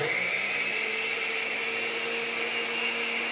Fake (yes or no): no